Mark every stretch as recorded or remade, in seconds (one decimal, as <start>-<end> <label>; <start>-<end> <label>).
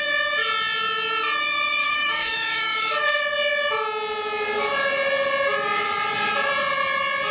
0.0-1.8 recorded; 1.8-3.2 remade; 3.2-7.3 recorded